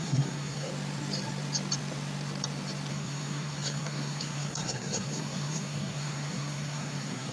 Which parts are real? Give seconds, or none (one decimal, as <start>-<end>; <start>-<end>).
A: 0.7-2.9